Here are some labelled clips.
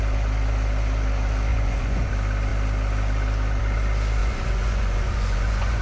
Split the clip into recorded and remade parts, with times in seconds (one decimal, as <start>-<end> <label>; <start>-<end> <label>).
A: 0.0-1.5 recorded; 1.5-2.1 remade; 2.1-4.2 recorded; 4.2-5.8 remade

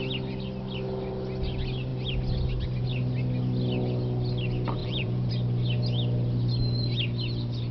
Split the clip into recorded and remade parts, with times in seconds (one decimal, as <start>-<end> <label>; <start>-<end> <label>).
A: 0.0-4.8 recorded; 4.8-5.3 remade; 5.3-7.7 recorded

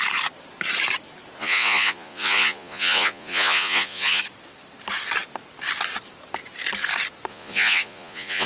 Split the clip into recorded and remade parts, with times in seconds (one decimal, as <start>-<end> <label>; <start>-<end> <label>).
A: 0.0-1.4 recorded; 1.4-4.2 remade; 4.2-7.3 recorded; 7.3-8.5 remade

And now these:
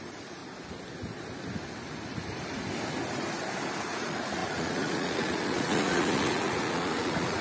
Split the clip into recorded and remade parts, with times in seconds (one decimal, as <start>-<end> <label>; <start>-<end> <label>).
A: 0.0-0.4 remade; 0.4-3.8 recorded; 3.8-7.4 remade

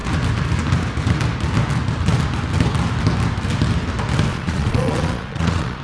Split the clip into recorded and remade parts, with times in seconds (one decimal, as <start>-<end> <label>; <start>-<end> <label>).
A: 0.0-4.3 recorded; 4.3-5.8 remade

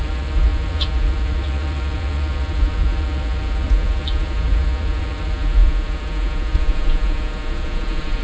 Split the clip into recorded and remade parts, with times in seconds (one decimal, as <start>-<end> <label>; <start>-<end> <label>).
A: 0.0-8.2 remade

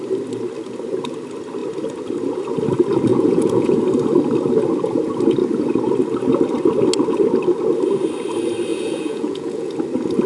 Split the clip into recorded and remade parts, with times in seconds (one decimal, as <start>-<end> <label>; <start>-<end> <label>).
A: 0.0-3.1 recorded; 3.1-3.8 remade; 3.8-8.7 recorded; 8.7-9.7 remade; 9.7-10.3 recorded

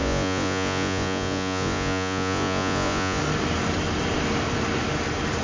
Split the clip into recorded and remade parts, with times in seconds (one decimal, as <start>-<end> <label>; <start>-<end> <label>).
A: 0.0-3.2 remade; 3.2-5.4 recorded